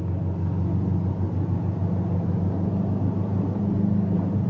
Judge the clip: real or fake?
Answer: real